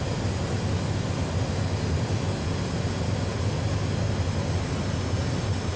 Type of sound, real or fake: real